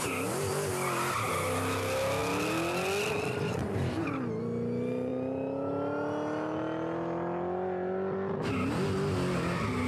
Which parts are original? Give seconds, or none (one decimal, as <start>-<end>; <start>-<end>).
0.0-9.9